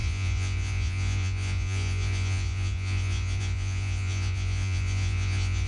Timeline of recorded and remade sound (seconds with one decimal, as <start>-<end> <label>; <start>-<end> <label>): 0.0-5.7 remade